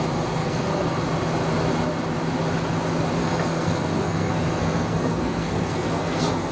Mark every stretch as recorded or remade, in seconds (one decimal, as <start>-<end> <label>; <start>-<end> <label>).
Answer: 0.0-0.4 recorded; 0.4-1.0 remade; 1.0-3.2 recorded; 3.2-6.5 remade